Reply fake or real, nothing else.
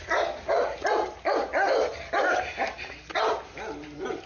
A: real